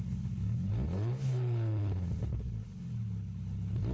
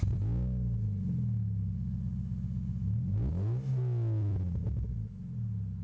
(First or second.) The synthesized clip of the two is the first